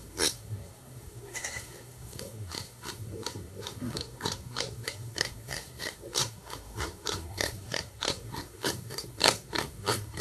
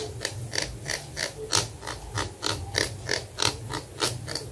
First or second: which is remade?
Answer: first